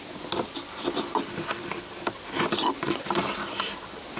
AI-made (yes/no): no